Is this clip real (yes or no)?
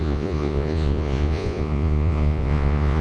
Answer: no